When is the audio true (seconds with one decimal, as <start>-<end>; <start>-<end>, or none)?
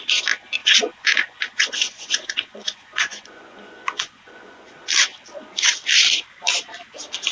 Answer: 0.0-0.6; 4.7-7.3